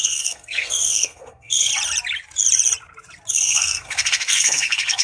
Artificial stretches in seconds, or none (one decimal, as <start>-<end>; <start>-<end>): 0.0-1.7; 3.3-5.0